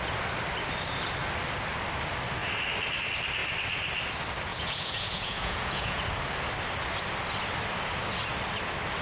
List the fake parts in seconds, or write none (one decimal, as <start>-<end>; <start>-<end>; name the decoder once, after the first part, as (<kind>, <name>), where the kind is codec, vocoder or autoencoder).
4.5-6.0 (vocoder, Vocos)